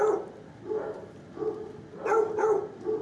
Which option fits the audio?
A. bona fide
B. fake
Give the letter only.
A